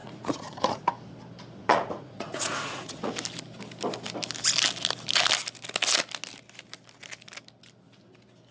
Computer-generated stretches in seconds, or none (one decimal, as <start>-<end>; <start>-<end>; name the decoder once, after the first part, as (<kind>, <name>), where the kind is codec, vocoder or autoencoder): 0.0-0.9 (vocoder, Vocos); 1.6-3.1